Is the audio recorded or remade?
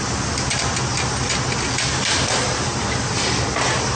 recorded